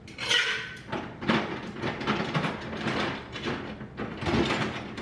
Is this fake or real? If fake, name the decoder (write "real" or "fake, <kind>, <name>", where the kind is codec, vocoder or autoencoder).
real